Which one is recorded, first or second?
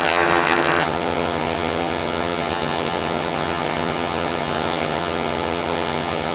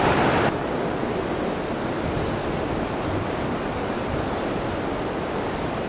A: second